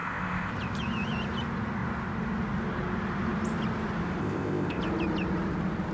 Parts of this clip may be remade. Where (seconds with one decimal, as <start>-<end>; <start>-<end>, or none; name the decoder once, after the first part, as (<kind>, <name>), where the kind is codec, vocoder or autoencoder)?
0.0-0.5 (codec, ZipCodec); 4.2-4.8